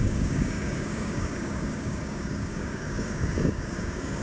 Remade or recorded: remade